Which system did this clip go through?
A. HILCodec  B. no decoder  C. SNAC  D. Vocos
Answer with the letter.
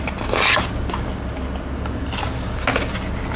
B